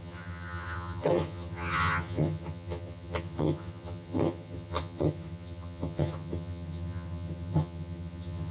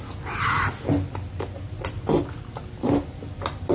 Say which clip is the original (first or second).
second